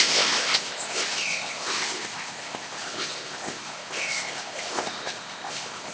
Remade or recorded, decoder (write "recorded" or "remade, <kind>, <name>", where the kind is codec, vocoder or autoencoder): remade, codec, ZipCodec